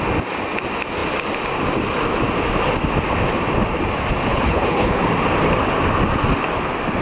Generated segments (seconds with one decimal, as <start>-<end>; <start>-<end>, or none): 4.3-5.0